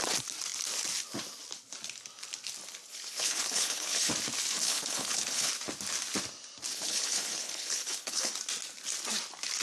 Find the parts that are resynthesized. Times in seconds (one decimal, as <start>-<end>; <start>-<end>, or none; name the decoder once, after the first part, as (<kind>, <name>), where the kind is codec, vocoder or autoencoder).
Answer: 2.9-4.1 (codec, HILCodec); 4.6-5.5; 6.7-8.3